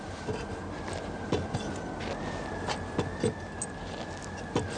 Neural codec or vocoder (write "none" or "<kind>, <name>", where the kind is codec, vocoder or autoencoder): none